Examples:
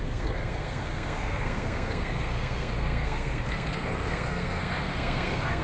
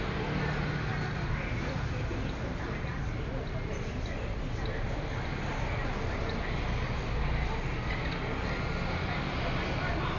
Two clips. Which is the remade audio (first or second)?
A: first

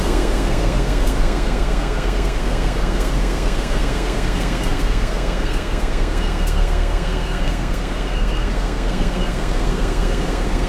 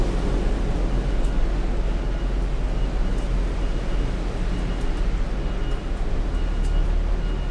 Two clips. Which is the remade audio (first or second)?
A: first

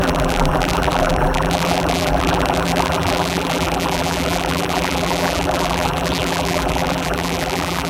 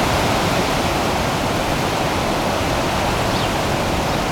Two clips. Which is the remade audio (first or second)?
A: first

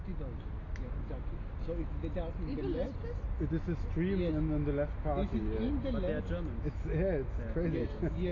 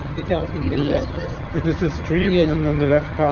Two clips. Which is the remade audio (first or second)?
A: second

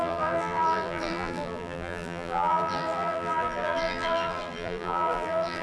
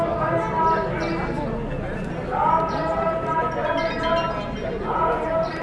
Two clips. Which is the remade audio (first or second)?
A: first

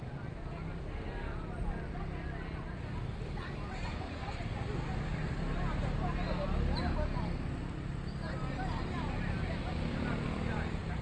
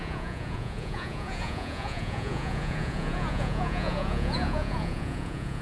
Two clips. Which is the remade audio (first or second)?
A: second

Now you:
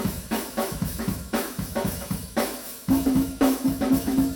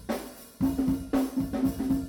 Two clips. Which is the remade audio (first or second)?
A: first